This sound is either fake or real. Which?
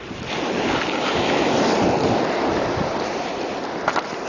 real